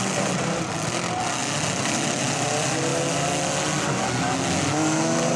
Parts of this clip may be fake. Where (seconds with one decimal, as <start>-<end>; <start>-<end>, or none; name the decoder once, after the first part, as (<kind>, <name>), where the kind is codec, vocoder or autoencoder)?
none